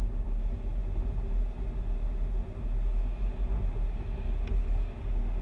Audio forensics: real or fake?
real